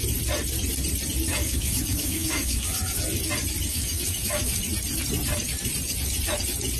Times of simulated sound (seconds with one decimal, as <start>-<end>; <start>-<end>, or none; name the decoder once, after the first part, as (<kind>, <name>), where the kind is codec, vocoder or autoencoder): 1.3-3.0 (autoencoder, DAC-VAE); 3.7-4.6